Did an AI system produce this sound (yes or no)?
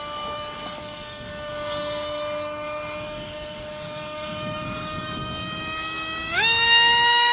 yes